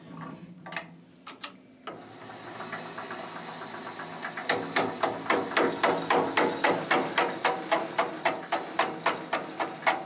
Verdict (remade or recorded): recorded